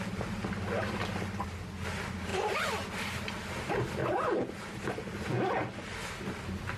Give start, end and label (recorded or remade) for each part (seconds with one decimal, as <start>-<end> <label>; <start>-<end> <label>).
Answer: 0.0-6.8 recorded